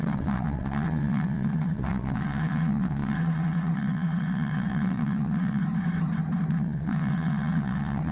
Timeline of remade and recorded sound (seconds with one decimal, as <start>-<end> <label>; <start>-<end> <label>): 0.0-5.6 remade; 5.6-6.5 recorded; 6.5-8.1 remade